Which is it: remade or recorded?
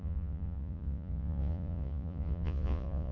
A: remade